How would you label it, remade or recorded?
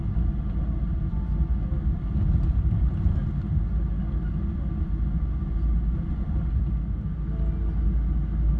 recorded